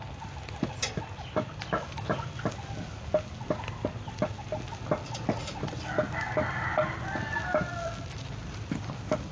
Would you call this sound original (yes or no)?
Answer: yes